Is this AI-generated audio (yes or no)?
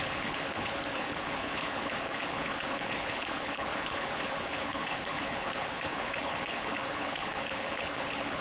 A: yes